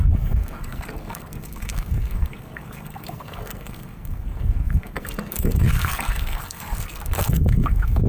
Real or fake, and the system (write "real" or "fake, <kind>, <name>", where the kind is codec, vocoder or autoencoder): fake, codec, SNAC